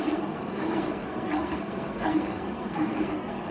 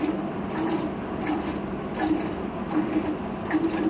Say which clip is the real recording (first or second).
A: second